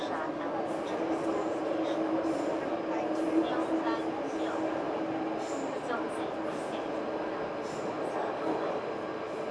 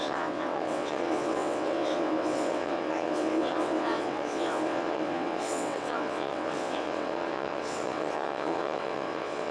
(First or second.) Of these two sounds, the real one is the first